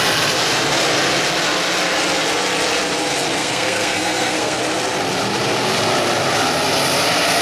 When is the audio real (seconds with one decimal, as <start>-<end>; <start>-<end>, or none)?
0.0-3.4; 4.6-7.4